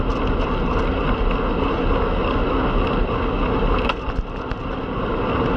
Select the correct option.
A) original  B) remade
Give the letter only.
A